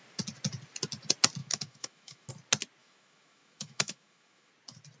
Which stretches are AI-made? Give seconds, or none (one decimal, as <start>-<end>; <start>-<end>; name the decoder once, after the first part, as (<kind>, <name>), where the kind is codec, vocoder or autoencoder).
1.4-2.3 (autoencoder, DAC-VAE); 2.8-4.5